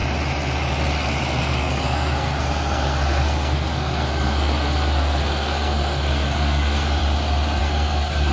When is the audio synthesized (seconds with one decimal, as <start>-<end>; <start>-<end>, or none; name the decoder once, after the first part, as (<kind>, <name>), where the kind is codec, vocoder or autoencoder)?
1.4-7.0 (codec, SNAC); 7.6-8.3